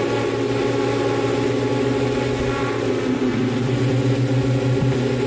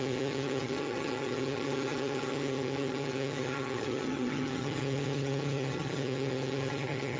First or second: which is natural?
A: first